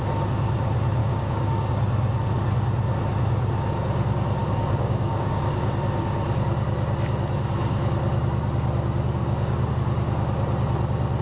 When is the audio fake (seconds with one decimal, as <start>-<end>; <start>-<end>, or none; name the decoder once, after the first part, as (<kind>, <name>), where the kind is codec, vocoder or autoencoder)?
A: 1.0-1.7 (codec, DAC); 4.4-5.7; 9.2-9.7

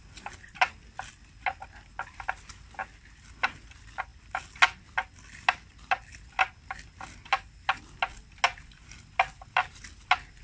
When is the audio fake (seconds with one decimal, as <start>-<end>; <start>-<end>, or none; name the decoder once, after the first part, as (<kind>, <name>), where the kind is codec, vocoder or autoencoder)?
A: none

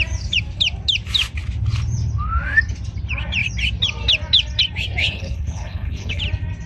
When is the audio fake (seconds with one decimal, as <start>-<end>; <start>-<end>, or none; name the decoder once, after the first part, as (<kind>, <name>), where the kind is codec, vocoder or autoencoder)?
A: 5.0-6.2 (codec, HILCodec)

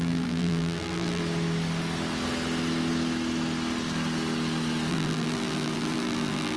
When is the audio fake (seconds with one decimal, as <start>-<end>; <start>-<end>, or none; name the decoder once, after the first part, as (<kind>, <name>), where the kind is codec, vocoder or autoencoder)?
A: 0.0-1.2 (vocoder, BigVGAN v2); 4.9-6.6